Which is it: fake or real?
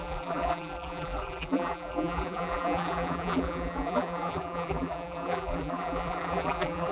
fake